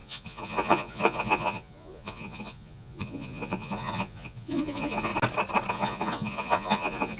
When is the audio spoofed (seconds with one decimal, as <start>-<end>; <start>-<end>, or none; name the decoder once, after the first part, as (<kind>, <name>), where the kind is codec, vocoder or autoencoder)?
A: 0.0-5.1 (vocoder, Vocos); 5.7-7.2